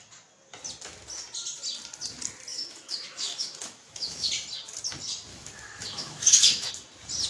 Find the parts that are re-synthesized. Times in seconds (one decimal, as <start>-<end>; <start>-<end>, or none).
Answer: 2.5-4.3; 5.3-6.7